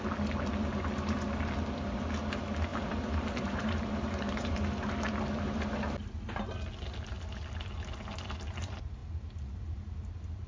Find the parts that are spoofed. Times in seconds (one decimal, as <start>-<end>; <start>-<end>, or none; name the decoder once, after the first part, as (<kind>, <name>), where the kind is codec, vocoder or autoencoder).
2.7-4.6 (vocoder, BigVGAN v2)